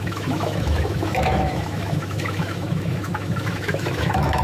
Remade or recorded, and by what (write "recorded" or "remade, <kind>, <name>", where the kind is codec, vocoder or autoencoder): remade, autoencoder, DAC-VAE